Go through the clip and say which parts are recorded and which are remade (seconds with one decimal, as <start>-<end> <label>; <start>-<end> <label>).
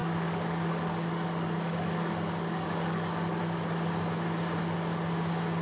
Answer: 0.0-3.4 remade; 3.4-5.6 recorded